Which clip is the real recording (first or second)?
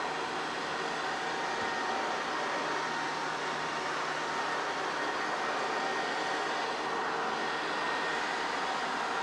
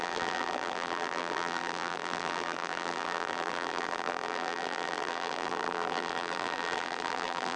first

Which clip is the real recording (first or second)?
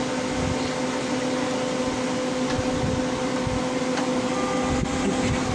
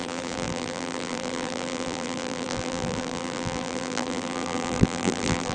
first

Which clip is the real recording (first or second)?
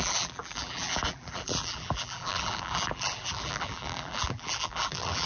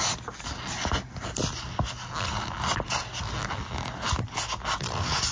second